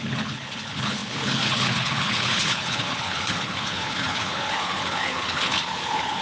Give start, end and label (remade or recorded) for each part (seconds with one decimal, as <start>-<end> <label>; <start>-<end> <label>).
0.0-6.2 remade